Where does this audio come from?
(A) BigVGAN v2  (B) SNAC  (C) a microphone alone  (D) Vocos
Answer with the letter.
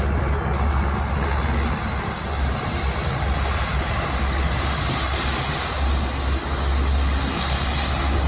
C